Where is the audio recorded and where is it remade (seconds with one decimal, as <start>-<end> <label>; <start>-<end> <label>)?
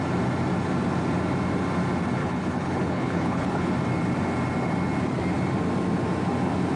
0.0-2.2 recorded; 2.2-3.7 remade; 3.7-6.8 recorded